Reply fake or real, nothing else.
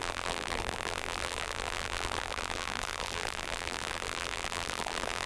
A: fake